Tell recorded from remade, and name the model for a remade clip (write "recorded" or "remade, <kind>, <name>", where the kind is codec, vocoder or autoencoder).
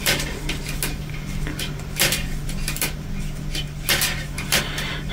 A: recorded